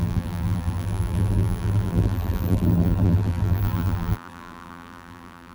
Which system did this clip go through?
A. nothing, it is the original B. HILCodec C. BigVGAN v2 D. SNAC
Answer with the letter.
C